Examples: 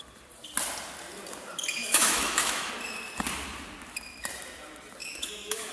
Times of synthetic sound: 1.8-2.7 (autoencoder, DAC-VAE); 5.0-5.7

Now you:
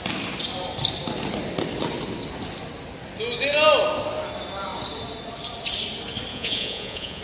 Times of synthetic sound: 6.3-7.2 (vocoder, Vocos)